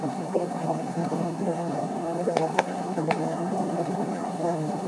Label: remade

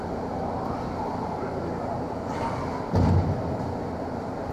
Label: recorded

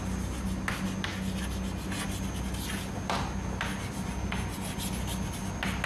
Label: recorded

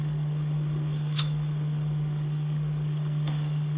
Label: remade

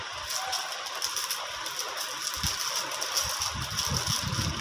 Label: recorded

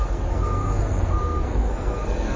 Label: remade